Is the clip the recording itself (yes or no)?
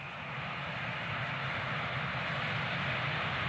yes